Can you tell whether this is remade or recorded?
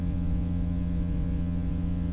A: remade